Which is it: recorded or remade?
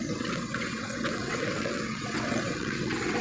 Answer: remade